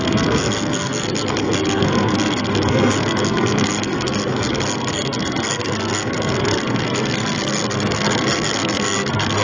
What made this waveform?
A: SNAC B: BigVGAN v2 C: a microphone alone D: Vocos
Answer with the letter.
A